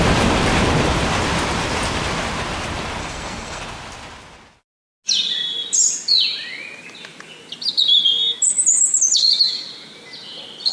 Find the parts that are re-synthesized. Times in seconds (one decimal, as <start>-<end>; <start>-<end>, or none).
3.0-3.6